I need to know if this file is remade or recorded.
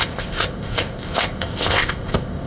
remade